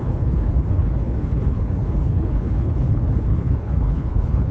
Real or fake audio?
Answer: fake